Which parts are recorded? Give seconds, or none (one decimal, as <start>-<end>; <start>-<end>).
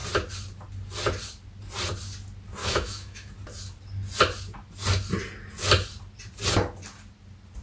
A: 0.0-2.6; 3.3-7.6